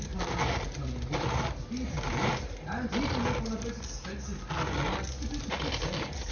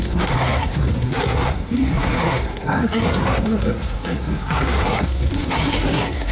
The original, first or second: first